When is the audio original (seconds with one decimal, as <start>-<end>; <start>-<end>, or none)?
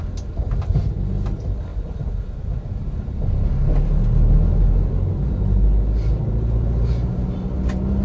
0.0-8.0